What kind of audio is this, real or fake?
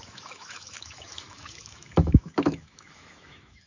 fake